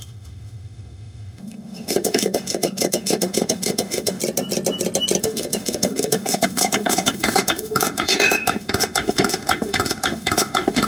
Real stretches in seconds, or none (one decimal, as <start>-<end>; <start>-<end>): 4.2-5.2